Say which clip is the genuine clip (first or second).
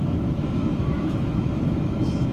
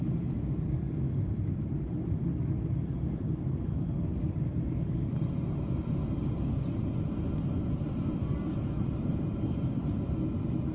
second